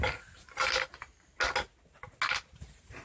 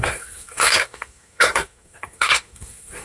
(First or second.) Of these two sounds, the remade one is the second